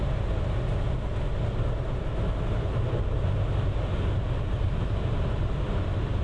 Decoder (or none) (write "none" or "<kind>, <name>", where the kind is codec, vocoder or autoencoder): none